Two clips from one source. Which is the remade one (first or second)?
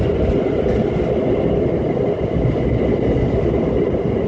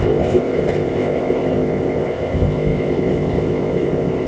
second